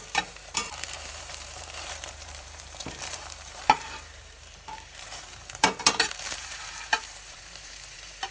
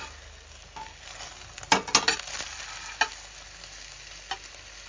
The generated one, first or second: first